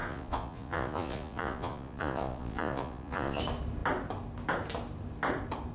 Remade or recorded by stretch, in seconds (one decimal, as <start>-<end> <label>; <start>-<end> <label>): 0.0-3.4 remade; 3.4-5.7 recorded